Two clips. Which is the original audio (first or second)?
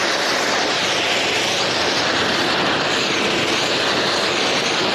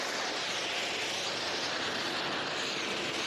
second